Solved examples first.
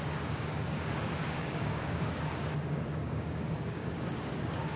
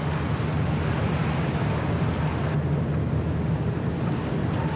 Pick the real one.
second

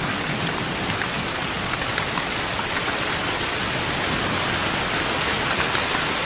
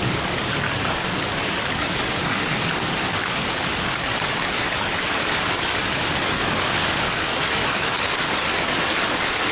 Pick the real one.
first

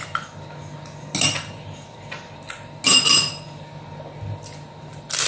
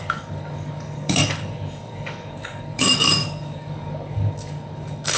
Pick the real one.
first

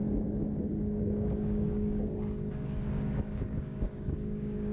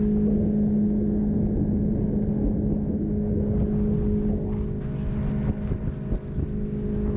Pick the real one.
second